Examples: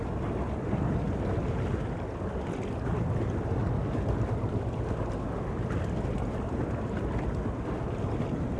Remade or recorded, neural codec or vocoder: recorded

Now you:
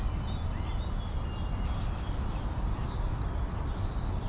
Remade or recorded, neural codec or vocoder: recorded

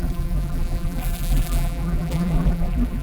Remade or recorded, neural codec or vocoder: remade, vocoder, BigVGAN v2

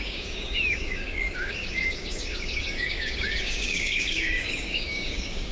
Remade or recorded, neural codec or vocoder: remade, codec, DAC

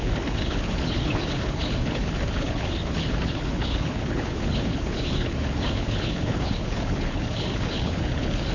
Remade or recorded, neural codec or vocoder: remade, codec, HILCodec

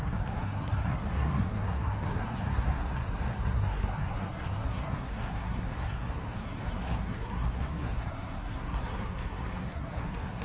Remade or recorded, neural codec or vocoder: remade, codec, SNAC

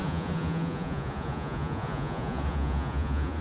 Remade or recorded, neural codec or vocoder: remade, vocoder, Vocos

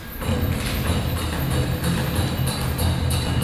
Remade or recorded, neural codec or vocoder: recorded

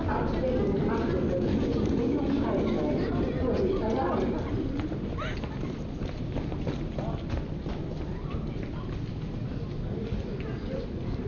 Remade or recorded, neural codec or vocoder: recorded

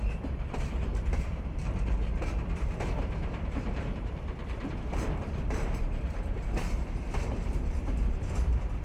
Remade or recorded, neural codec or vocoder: remade, vocoder, BigVGAN v2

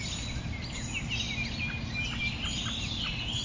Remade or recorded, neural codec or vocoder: recorded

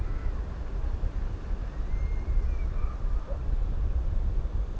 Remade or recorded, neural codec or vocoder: recorded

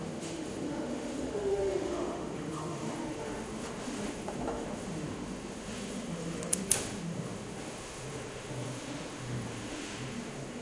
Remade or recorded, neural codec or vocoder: remade, autoencoder, DAC-VAE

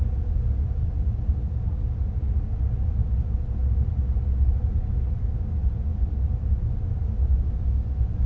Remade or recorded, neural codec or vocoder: recorded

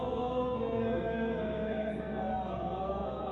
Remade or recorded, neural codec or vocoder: remade, codec, SNAC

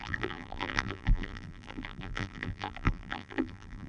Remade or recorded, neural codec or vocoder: remade, vocoder, BigVGAN v2